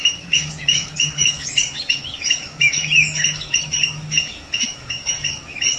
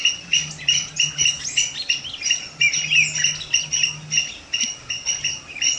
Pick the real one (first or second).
second